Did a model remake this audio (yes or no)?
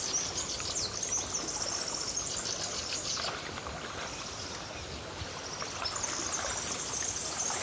no